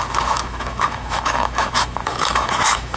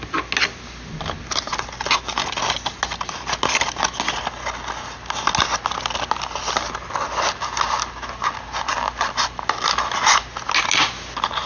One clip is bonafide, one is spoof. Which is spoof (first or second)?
first